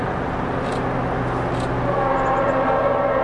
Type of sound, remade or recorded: recorded